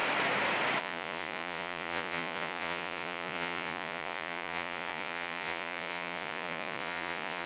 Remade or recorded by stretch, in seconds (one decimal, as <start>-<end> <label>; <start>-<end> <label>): 0.0-0.8 recorded; 0.8-7.5 remade